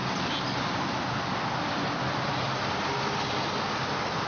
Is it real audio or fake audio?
real